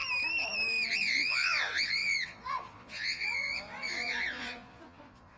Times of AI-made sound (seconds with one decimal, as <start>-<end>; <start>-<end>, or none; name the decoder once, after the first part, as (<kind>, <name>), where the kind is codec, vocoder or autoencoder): 0.9-5.4 (vocoder, Vocos)

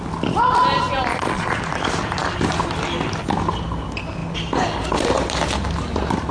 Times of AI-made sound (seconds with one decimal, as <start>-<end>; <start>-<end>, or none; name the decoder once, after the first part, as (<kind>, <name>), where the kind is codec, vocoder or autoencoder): 1.1-1.6 (vocoder, Vocos)

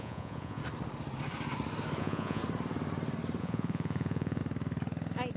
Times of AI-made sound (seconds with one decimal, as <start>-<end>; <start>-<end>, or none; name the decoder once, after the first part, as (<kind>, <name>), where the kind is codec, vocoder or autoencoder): 0.0-0.6 (vocoder, Vocos); 2.0-2.4; 3.4-4.4